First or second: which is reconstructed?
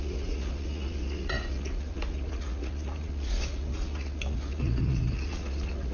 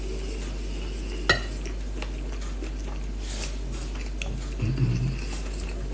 first